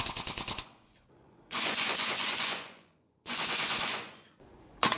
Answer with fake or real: fake